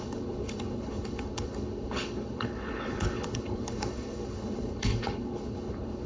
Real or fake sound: fake